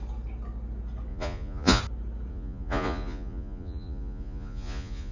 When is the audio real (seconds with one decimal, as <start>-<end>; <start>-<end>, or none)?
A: 0.0-1.1; 1.8-2.3